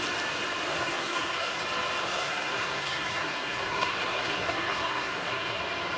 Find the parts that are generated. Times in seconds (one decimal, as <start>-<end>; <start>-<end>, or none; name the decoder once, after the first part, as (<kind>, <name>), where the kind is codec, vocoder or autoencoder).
0.7-1.6 (codec, SNAC); 2.0-5.6